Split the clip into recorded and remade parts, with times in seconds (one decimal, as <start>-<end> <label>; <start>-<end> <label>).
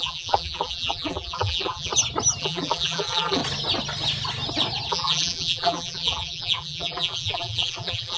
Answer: 0.0-1.9 remade; 1.9-2.4 recorded; 2.4-3.4 remade; 3.4-4.9 recorded; 4.9-8.2 remade